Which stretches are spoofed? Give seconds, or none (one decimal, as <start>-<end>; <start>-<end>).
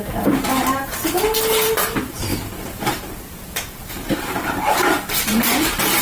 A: 0.0-2.3; 4.1-6.0